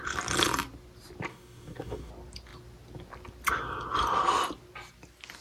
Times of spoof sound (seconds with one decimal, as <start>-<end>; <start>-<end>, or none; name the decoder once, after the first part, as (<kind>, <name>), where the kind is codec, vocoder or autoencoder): 1.3-2.1 (codec, DAC)